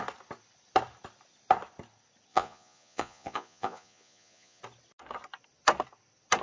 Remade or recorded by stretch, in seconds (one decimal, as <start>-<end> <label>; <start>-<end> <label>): 0.0-2.3 recorded; 2.3-4.6 remade; 4.6-6.4 recorded

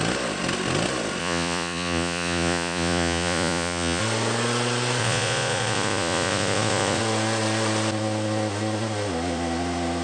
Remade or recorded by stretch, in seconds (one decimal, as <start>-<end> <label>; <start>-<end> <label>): 0.0-1.2 recorded; 1.2-4.0 remade; 4.0-5.0 recorded; 5.0-7.0 remade; 7.0-10.0 recorded